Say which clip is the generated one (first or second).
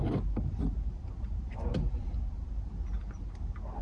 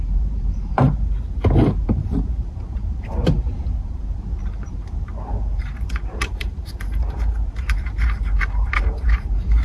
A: second